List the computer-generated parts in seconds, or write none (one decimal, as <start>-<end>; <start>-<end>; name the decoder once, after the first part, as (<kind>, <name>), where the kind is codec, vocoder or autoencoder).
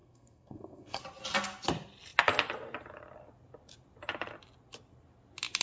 0.0-1.0 (codec, SNAC)